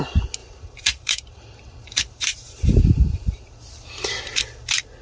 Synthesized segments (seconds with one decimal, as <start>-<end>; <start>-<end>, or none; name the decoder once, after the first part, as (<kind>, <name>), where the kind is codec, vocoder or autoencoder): 0.4-2.8 (vocoder, BigVGAN v2)